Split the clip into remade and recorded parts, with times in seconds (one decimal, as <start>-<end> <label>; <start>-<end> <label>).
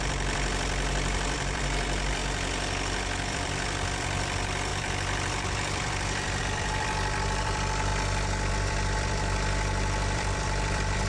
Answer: 0.0-2.2 remade; 2.2-3.3 recorded; 3.3-7.9 remade; 7.9-8.5 recorded; 8.5-11.1 remade